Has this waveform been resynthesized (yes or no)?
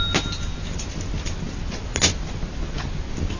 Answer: no